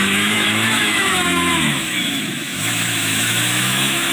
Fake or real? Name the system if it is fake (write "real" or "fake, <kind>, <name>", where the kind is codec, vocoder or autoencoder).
fake, autoencoder, DAC-VAE